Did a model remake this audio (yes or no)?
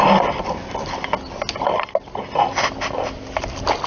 no